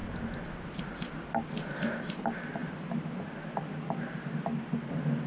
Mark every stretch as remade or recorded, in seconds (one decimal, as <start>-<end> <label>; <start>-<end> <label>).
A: 0.0-5.3 recorded